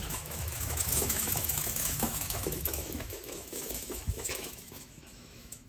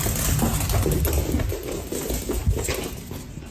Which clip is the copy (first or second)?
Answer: first